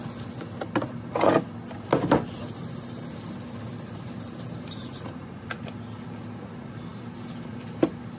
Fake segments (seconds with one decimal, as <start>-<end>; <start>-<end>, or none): 4.8-5.6